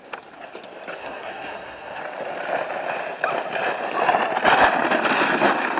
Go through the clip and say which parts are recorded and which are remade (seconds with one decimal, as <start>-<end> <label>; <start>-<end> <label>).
0.0-1.0 recorded; 1.0-2.0 remade; 2.0-5.8 recorded